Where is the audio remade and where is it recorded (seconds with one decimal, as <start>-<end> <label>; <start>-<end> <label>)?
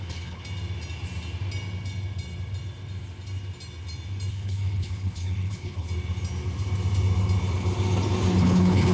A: 0.0-0.4 remade; 0.4-4.3 recorded; 4.3-5.9 remade; 5.9-8.4 recorded; 8.4-8.9 remade